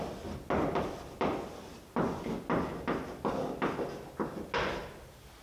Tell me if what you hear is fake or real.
real